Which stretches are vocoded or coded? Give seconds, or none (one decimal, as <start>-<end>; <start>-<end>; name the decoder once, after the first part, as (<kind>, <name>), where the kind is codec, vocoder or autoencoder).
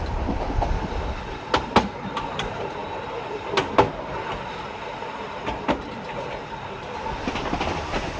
none